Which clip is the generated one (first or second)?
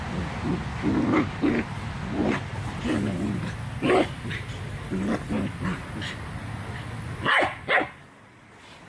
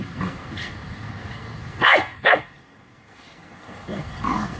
second